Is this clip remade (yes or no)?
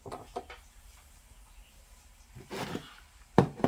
no